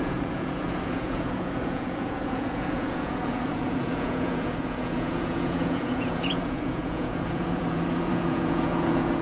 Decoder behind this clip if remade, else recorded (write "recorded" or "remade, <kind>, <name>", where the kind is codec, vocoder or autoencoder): remade, vocoder, Vocos